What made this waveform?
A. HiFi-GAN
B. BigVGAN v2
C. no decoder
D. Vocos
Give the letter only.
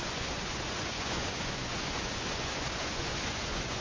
D